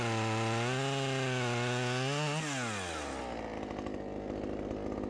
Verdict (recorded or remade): recorded